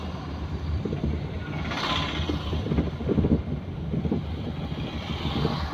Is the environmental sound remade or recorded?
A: recorded